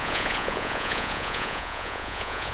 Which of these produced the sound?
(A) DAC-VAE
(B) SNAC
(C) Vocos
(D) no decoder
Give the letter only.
C